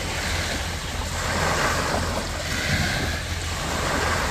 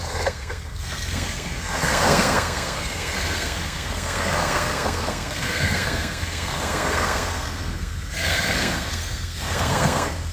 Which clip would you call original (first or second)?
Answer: first